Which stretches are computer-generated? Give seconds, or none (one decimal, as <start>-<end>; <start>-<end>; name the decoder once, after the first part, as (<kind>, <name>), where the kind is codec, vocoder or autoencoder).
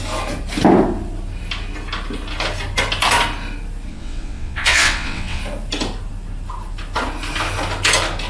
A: 3.9-5.4 (vocoder, WaveNeXt)